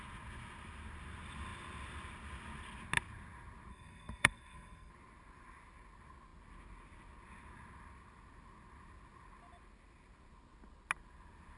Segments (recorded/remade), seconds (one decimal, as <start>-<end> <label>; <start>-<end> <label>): 0.0-3.7 recorded; 3.7-4.9 remade; 4.9-11.6 recorded